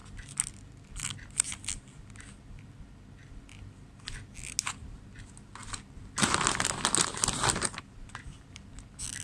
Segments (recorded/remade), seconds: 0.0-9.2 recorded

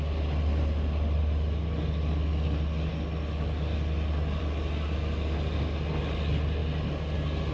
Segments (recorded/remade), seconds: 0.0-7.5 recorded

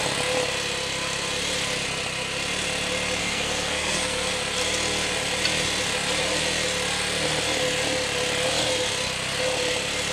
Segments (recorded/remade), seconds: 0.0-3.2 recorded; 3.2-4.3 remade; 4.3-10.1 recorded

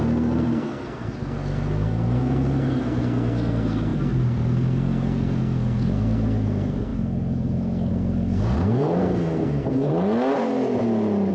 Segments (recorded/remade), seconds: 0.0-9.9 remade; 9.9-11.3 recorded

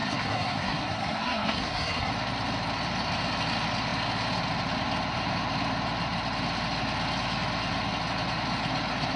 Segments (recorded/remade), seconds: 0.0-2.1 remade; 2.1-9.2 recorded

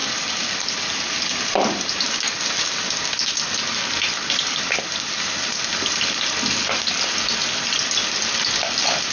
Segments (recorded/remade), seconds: 0.0-9.1 recorded

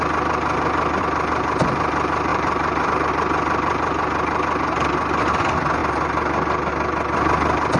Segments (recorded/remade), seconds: 0.0-2.3 recorded; 2.3-3.1 remade; 3.1-7.8 recorded

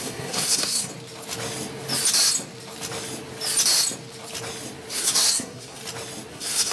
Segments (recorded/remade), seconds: 0.0-0.9 remade; 0.9-4.9 recorded; 4.9-5.8 remade; 5.8-6.3 recorded; 6.3-6.7 remade